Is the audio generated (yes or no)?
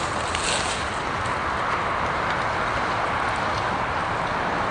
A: no